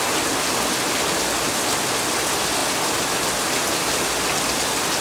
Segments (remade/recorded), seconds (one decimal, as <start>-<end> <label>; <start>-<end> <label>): 0.0-5.0 recorded